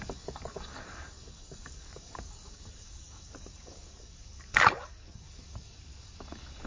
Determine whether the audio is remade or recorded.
remade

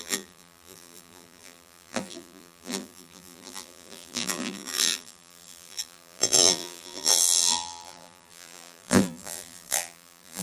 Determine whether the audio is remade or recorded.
remade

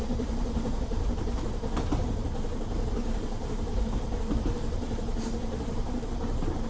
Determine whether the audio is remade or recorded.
remade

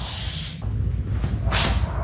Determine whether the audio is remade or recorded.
recorded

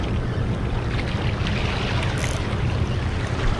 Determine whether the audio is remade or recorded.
recorded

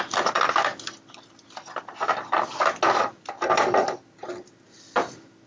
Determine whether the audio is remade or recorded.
recorded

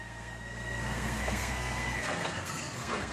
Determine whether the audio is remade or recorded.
remade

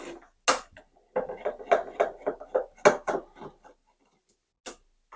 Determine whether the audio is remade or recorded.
recorded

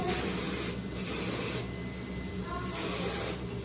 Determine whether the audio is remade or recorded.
recorded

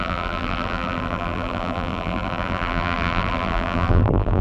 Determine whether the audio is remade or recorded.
remade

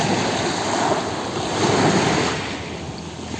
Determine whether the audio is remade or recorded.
recorded